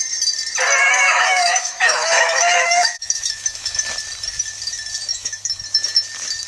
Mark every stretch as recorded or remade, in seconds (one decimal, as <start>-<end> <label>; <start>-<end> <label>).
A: 0.0-0.8 recorded; 0.8-3.8 remade; 3.8-5.1 recorded; 5.1-5.6 remade; 5.6-6.5 recorded